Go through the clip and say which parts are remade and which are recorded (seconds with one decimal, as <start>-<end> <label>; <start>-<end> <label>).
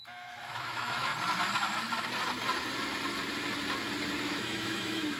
0.0-1.1 remade; 1.1-4.2 recorded; 4.2-5.2 remade